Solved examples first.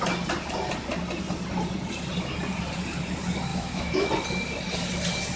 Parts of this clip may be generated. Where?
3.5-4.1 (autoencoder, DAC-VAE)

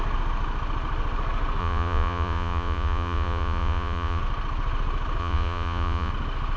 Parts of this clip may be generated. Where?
1.6-4.2 (vocoder, Vocos); 5.2-6.1

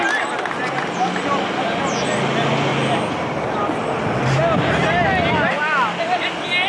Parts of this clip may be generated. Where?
none

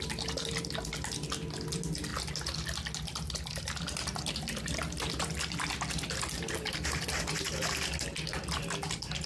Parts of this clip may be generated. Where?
none

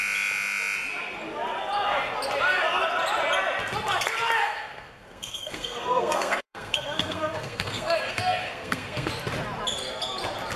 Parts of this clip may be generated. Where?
4.4-9.1 (codec, SNAC)

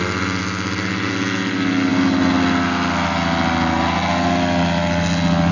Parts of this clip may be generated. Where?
none

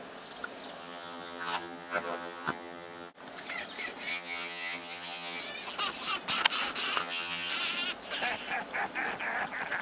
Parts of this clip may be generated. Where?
0.8-3.1 (vocoder, HiFi-GAN); 4.1-5.4; 7.0-7.5